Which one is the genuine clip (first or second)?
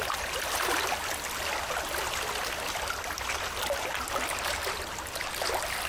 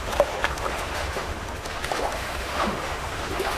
first